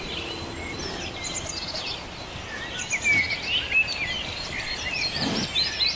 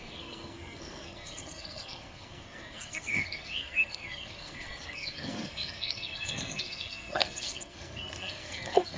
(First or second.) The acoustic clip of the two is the first